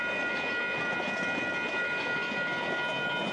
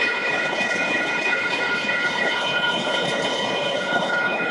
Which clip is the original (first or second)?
first